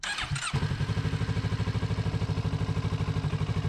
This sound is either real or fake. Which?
real